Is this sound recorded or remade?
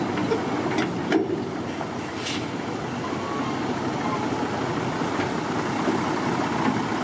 recorded